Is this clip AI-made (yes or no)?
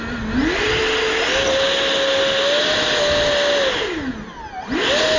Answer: no